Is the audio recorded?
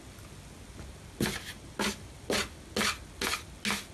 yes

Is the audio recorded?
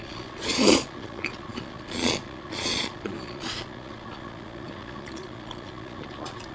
no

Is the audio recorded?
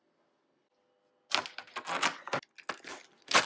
yes